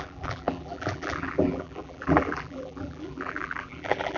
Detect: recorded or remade remade